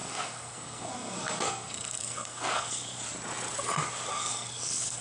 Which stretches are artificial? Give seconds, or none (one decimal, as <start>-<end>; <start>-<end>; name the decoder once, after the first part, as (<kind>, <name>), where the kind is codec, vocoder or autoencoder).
0.0-3.0 (codec, SNAC); 4.1-5.0